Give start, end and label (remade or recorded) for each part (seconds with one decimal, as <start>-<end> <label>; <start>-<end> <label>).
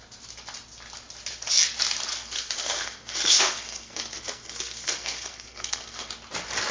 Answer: 0.0-2.1 recorded; 2.1-6.1 remade; 6.1-6.7 recorded